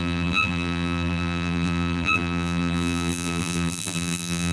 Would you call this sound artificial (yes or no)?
yes